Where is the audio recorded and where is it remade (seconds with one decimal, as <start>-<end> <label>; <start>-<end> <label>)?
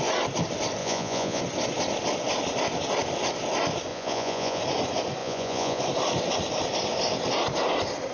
0.0-0.8 recorded; 0.8-1.4 remade; 1.4-3.9 recorded; 3.9-4.6 remade; 4.6-5.2 recorded; 5.2-5.8 remade; 5.8-8.1 recorded